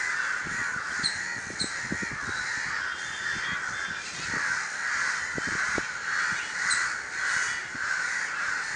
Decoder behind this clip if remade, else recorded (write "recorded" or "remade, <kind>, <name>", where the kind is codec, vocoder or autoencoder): recorded